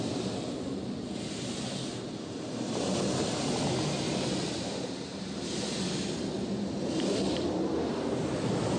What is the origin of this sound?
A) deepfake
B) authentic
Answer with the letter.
B